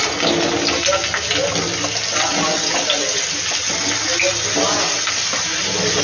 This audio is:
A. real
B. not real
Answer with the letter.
A